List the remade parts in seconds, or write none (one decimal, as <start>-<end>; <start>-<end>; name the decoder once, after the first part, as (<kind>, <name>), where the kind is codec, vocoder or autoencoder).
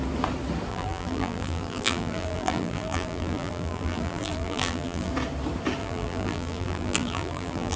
0.7-5.1 (vocoder, BigVGAN v2); 5.8-7.8